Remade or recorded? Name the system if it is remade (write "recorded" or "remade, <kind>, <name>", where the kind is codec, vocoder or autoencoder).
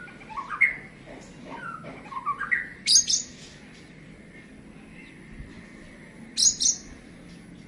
recorded